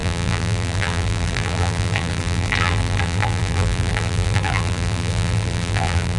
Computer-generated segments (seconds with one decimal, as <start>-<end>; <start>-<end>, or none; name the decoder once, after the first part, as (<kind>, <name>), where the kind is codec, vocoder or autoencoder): 0.0-6.2 (vocoder, BigVGAN v2)